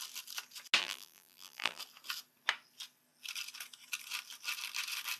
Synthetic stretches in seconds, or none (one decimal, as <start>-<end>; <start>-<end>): 0.8-1.8